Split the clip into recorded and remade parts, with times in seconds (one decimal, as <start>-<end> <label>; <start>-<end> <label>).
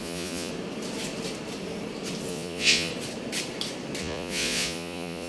0.0-0.5 remade; 0.5-2.3 recorded; 2.3-2.9 remade; 2.9-4.0 recorded; 4.0-5.3 remade